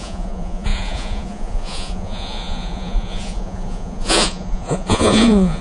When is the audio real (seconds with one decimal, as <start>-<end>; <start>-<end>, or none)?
none